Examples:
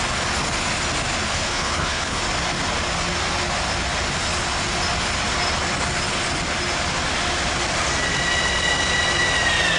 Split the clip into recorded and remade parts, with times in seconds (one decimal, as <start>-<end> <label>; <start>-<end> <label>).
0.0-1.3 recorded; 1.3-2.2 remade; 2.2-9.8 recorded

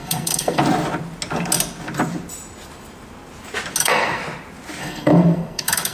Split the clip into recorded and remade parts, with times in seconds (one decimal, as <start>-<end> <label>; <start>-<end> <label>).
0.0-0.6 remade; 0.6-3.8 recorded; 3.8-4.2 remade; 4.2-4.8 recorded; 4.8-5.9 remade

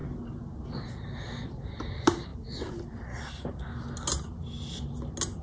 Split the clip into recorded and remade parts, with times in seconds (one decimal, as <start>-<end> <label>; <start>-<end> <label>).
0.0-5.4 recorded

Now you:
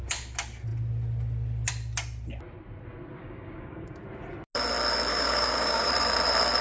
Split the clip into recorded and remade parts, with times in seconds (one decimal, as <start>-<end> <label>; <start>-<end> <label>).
0.0-3.2 recorded; 3.2-4.0 remade; 4.0-5.1 recorded; 5.1-5.9 remade; 5.9-6.6 recorded